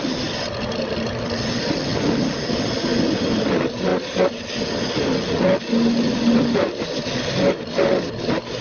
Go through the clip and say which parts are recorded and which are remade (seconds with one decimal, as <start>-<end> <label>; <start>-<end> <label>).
0.0-8.6 recorded